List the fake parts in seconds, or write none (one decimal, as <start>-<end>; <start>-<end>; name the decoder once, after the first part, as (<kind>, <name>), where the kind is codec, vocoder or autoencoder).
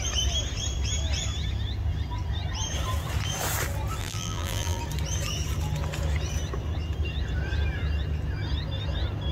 4.0-4.8 (vocoder, BigVGAN v2)